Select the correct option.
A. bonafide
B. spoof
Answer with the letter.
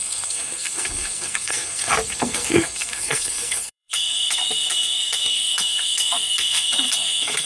B